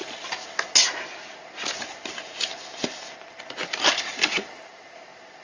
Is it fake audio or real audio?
real